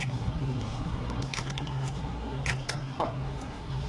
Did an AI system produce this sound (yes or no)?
yes